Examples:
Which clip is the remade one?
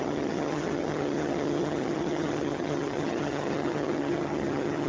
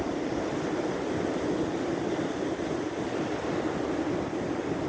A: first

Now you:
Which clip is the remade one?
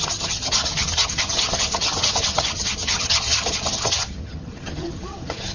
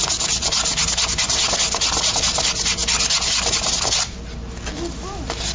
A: first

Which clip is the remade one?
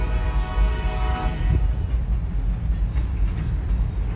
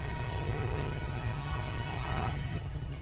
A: second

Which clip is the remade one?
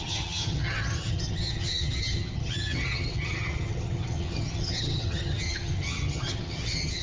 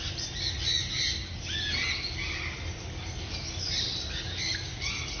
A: first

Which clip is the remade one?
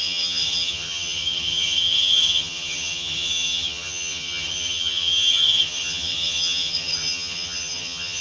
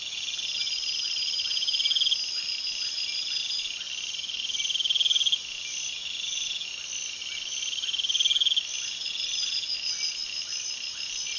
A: first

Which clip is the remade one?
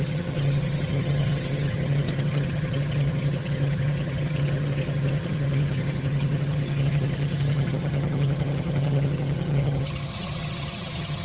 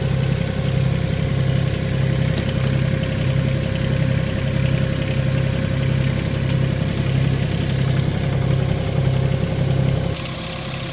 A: first